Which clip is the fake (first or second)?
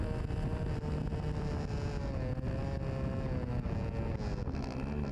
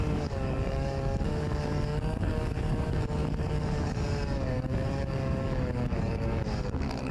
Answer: second